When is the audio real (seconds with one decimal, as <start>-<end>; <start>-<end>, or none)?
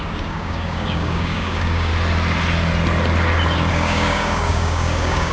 1.9-3.7